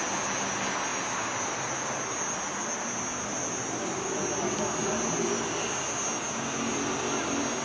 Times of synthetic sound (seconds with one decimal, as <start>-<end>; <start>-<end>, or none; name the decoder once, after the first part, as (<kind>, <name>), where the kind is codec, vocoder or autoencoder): none